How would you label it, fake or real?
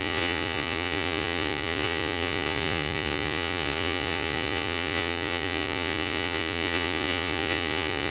fake